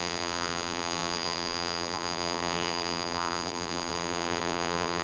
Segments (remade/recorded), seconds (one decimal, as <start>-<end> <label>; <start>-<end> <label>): 0.0-5.0 remade